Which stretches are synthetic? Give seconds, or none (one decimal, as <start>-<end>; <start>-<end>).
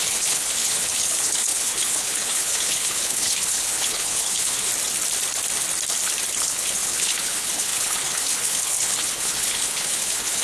0.0-4.7; 6.4-10.4